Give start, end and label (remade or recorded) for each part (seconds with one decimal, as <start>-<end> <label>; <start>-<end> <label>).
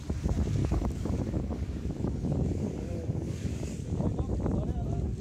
0.0-0.6 recorded; 0.6-3.7 remade; 3.7-5.2 recorded